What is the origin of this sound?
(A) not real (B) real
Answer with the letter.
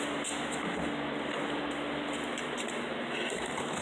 B